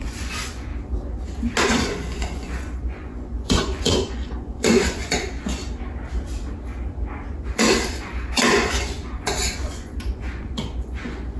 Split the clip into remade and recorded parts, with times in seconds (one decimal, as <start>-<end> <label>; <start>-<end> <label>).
0.0-0.7 remade; 0.7-1.6 recorded; 1.6-5.6 remade; 5.6-7.3 recorded; 7.3-11.4 remade